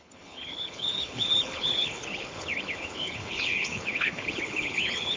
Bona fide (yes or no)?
no